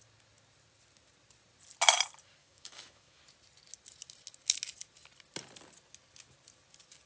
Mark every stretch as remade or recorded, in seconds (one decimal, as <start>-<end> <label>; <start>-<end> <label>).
0.0-2.4 recorded; 2.4-3.2 remade; 3.2-7.1 recorded